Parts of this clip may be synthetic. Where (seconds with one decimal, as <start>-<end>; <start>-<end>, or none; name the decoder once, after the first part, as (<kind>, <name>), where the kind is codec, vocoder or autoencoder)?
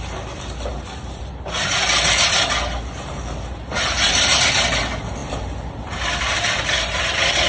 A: 0.7-1.5 (vocoder, BigVGAN v2); 3.6-4.8